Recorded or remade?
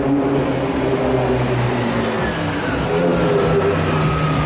recorded